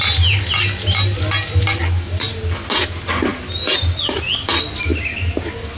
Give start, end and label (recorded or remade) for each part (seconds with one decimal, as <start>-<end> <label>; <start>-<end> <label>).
0.0-5.8 recorded